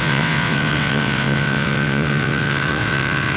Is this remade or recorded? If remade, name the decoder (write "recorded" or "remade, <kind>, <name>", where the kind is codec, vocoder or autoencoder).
remade, vocoder, WaveNeXt